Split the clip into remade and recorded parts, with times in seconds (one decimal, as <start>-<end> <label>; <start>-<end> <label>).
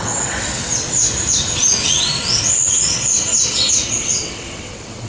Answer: 0.0-1.0 remade; 1.0-1.8 recorded; 1.8-3.3 remade; 3.3-4.0 recorded; 4.0-5.1 remade